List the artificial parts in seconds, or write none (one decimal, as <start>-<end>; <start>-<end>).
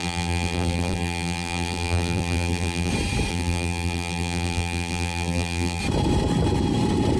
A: 0.0-2.9; 3.3-5.8